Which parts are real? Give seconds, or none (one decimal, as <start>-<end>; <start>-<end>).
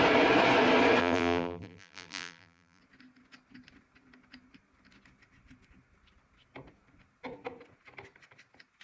0.0-1.0; 2.8-8.8